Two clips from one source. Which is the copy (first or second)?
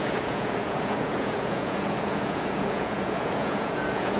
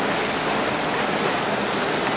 first